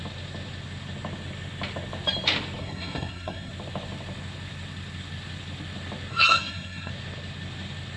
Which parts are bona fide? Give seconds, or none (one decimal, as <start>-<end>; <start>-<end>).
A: 0.0-2.6; 3.5-6.1; 6.9-8.0